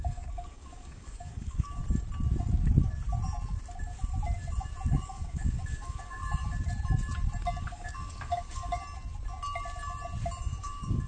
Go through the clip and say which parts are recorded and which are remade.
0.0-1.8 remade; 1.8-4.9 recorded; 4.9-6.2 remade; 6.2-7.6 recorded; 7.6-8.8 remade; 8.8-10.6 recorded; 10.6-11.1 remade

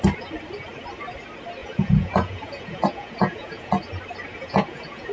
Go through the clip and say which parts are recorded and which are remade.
0.0-1.6 recorded; 1.6-3.7 remade; 3.7-4.3 recorded; 4.3-5.1 remade

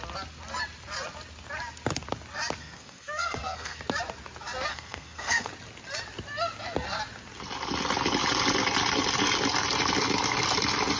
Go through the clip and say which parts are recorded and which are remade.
0.0-2.6 recorded; 2.6-3.8 remade; 3.8-4.7 recorded; 4.7-5.5 remade; 5.5-11.0 recorded

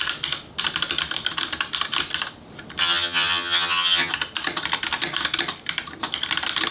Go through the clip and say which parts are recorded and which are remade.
0.0-2.8 recorded; 2.8-4.1 remade; 4.1-6.7 recorded

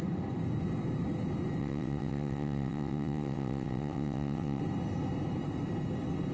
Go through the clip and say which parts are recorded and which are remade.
0.0-1.6 recorded; 1.6-4.6 remade; 4.6-6.3 recorded

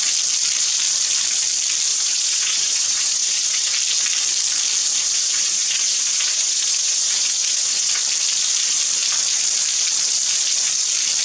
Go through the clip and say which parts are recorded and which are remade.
0.0-1.9 recorded; 1.9-3.7 remade; 3.7-4.8 recorded; 4.8-8.0 remade; 8.0-11.2 recorded

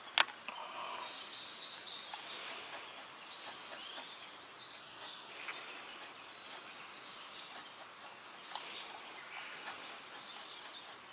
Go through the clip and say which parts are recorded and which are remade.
0.0-4.8 recorded; 4.8-5.3 remade; 5.3-11.1 recorded